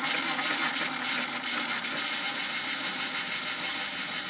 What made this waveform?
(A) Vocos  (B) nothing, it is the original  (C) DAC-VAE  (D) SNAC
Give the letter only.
B